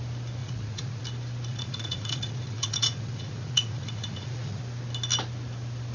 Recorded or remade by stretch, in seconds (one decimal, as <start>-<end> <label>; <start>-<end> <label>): 0.0-0.4 recorded; 0.4-1.0 remade; 1.0-1.5 recorded; 1.5-4.6 remade; 4.6-5.9 recorded